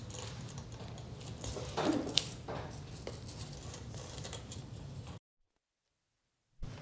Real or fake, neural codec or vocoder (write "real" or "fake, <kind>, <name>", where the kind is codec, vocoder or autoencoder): real